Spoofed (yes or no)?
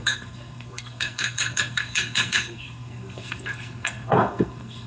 yes